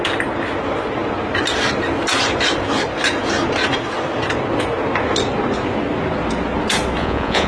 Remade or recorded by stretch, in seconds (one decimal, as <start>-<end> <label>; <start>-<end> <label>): 0.0-7.0 recorded; 7.0-7.5 remade